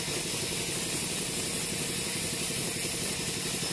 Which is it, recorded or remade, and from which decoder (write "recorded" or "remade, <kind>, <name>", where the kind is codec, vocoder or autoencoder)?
recorded